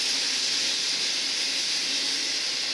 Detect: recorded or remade recorded